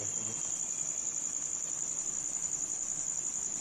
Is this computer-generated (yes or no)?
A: no